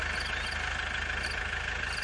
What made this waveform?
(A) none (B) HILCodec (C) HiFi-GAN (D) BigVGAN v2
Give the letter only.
A